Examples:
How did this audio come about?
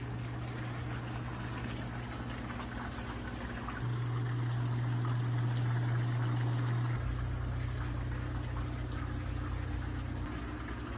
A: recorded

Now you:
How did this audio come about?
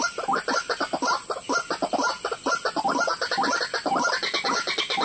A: recorded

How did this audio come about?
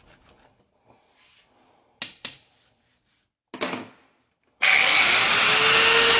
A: recorded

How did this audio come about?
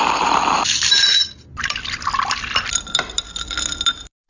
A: recorded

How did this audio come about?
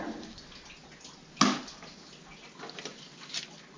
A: recorded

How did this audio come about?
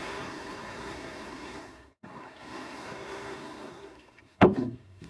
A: remade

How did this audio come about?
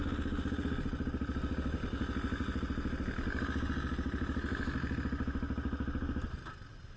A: recorded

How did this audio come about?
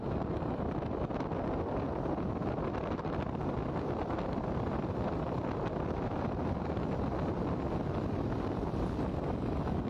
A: recorded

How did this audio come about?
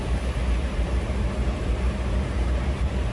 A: remade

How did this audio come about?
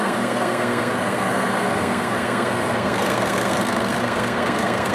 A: remade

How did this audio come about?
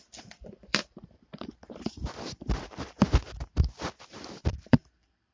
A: remade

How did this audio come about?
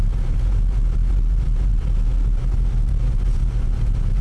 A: recorded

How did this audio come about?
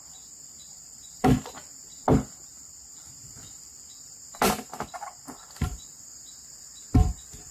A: remade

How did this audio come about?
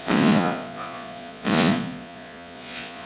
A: remade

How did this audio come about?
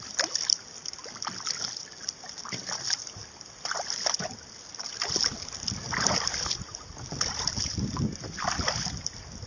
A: recorded